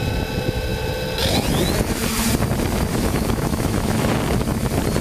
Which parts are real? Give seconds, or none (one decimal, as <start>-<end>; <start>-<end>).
0.0-2.9; 4.1-5.0